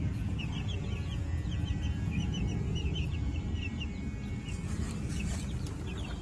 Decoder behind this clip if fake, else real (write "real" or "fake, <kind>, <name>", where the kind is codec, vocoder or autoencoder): real